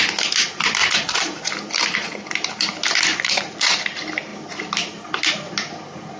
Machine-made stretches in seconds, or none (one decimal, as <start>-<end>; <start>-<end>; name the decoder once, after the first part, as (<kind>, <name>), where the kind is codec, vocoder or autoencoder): 0.8-1.5 (vocoder, Vocos); 3.1-3.8